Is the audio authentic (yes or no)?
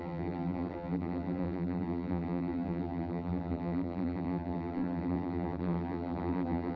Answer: no